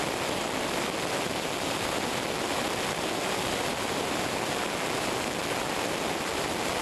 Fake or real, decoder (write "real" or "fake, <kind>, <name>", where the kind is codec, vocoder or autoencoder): real